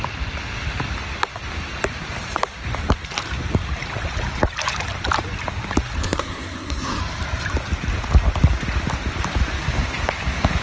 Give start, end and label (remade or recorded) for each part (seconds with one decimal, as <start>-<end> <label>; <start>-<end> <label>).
0.0-6.0 recorded; 6.0-7.0 remade; 7.0-10.6 recorded